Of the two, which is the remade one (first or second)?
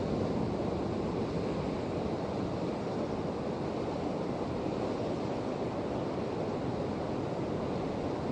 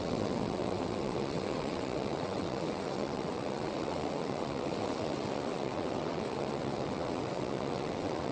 second